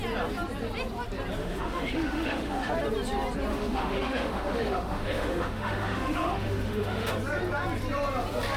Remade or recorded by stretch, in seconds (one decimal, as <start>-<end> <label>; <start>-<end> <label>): 0.0-1.4 recorded; 1.4-2.7 remade; 2.7-3.5 recorded; 3.5-7.1 remade; 7.1-8.6 recorded